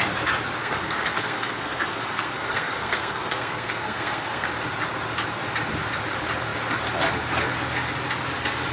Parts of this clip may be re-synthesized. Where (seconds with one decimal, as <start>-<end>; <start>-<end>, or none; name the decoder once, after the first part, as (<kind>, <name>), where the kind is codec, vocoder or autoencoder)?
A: 0.6-4.5 (codec, SNAC)